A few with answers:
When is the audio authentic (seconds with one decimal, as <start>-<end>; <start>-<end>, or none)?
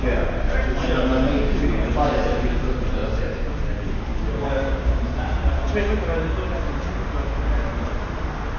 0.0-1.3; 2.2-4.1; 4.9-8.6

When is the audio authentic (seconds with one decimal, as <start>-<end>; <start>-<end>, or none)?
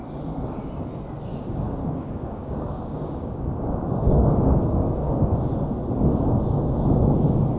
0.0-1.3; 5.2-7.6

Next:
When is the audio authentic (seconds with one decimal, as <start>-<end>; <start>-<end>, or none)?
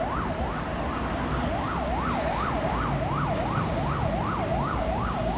0.0-4.5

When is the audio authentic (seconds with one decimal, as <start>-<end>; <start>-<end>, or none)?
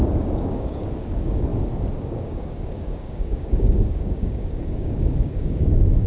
1.5-2.0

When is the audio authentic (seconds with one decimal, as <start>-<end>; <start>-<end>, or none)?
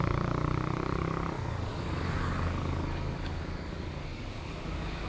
none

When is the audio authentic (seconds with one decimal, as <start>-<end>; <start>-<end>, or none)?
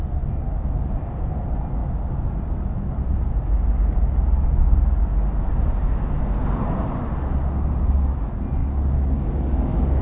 0.0-8.6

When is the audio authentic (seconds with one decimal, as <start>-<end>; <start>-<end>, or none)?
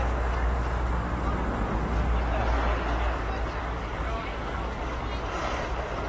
0.0-3.6; 4.8-6.1